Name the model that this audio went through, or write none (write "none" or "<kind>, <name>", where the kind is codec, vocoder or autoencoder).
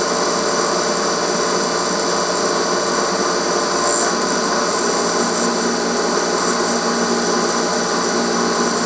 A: none